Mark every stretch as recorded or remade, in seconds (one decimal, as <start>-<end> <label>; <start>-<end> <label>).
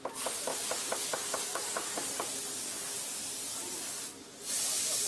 0.0-5.1 recorded